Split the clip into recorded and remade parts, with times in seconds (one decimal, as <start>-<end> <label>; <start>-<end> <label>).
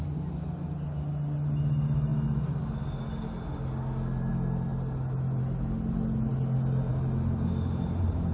0.0-8.3 recorded